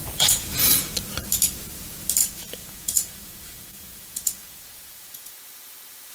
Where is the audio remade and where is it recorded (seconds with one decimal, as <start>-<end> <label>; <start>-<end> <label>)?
0.0-0.9 remade; 0.9-2.2 recorded; 2.2-6.1 remade